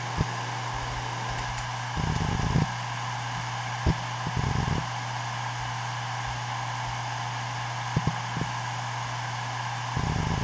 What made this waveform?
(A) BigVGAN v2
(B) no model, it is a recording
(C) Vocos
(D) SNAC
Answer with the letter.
B